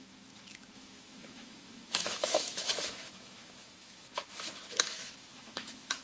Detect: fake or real fake